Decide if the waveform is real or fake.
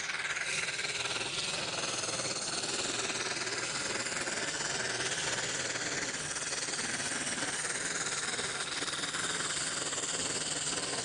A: real